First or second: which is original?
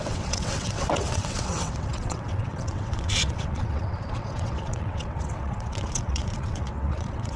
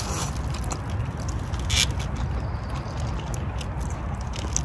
second